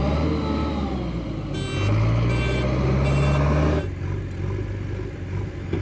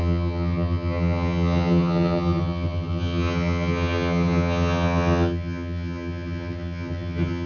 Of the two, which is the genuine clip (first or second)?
first